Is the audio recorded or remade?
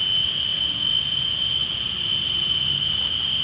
recorded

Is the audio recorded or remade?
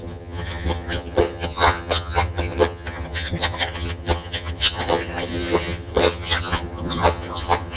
remade